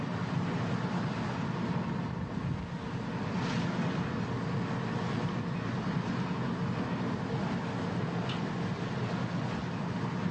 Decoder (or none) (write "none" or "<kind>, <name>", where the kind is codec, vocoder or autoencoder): none